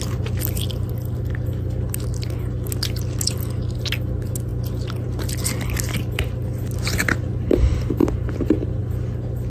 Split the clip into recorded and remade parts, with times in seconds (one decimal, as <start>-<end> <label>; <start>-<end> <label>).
0.0-9.5 recorded

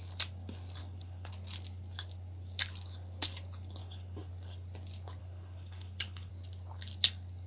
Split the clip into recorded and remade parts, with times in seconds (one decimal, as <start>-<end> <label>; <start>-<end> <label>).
0.0-0.8 recorded; 0.8-1.3 remade; 1.3-3.8 recorded; 3.8-4.3 remade; 4.3-5.2 recorded; 5.2-6.3 remade; 6.3-7.5 recorded

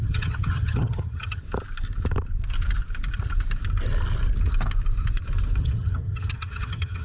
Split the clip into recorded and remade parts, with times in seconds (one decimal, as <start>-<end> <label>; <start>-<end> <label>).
0.0-1.4 remade; 1.4-5.6 recorded; 5.6-7.0 remade

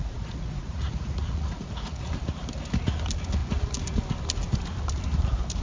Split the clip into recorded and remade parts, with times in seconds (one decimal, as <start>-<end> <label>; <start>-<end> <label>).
0.0-2.1 remade; 2.1-5.6 recorded